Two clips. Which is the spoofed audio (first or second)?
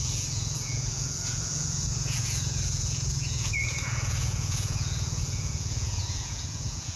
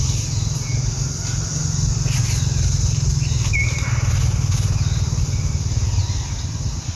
first